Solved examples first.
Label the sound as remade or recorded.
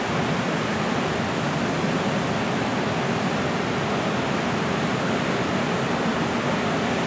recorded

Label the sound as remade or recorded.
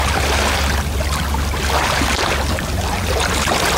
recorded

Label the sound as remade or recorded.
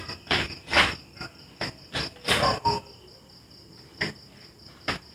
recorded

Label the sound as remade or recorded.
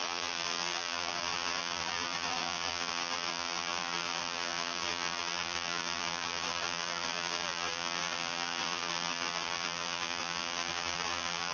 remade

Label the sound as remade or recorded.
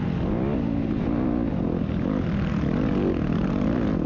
recorded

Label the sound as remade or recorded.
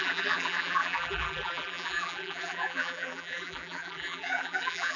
remade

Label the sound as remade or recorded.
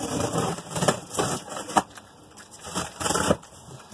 remade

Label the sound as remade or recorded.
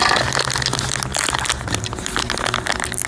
recorded